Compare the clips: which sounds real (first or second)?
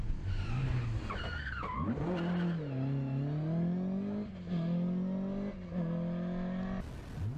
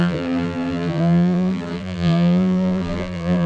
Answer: first